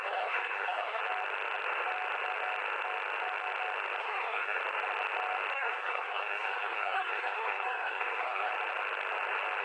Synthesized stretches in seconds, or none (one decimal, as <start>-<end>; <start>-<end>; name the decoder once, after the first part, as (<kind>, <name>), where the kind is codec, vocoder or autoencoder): 0.0-1.0 (codec, SNAC); 4.0-4.6; 5.5-8.5

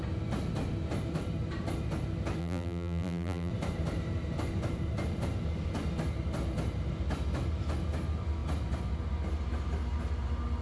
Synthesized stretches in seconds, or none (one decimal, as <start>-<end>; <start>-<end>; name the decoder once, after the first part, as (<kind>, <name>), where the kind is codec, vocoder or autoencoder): 2.4-3.5 (vocoder, BigVGAN v2)

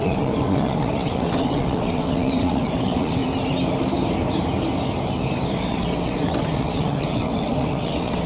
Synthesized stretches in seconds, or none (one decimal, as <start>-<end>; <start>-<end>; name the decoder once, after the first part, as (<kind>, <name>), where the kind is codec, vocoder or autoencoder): 0.0-3.2 (vocoder, WaveNeXt); 5.6-8.3

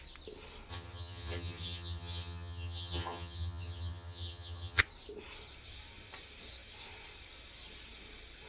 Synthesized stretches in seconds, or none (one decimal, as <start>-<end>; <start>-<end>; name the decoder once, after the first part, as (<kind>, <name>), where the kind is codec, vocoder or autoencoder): 0.7-4.8 (vocoder, HiFi-GAN)